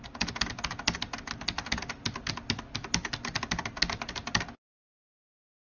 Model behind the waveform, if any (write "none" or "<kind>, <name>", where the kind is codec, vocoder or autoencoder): none